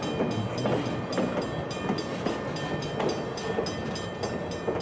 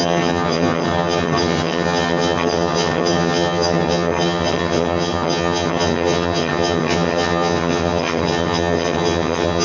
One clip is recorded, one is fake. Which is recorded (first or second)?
first